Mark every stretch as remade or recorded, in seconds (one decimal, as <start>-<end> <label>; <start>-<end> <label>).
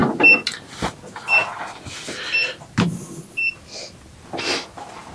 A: 0.0-5.1 recorded